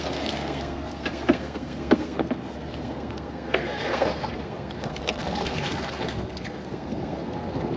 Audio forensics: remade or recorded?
remade